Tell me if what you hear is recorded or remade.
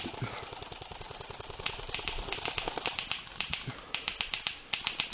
recorded